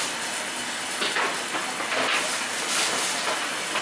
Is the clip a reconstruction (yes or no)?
no